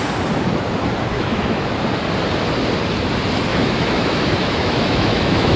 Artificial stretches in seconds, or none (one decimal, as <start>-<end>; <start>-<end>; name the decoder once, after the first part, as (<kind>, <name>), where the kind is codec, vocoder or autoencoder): 1.1-1.7 (autoencoder, DAC-VAE); 3.5-5.6